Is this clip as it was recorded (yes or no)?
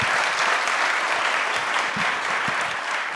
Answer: yes